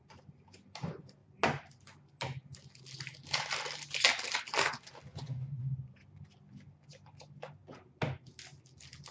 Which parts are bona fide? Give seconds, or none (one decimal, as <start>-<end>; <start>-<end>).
0.0-5.1; 5.6-9.1